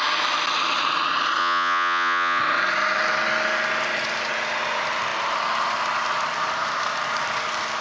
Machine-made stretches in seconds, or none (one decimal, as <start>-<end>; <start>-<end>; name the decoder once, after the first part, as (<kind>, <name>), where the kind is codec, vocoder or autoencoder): 1.4-2.4 (vocoder, Vocos)